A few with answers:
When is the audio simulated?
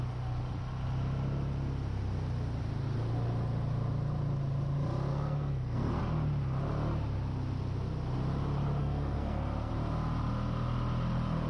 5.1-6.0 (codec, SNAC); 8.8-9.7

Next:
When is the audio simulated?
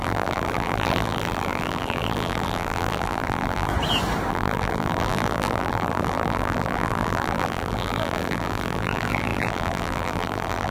0.0-3.7 (vocoder, BigVGAN v2); 4.3-10.7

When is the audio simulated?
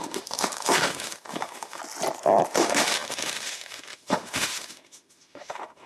0.0-1.8 (autoencoder, DAC-VAE); 2.5-5.9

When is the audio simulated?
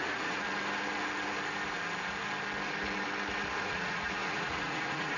0.0-0.5 (vocoder, Vocos); 3.6-5.2